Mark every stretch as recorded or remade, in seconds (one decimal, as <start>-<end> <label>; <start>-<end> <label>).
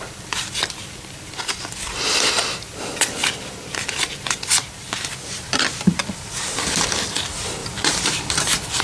0.0-7.6 recorded; 7.6-8.8 remade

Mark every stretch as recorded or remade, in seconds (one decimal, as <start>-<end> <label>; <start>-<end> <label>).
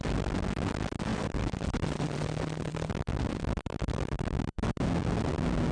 0.0-1.1 recorded; 1.1-2.2 remade; 2.2-5.7 recorded